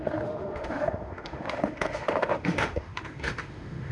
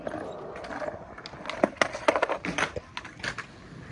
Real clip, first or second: second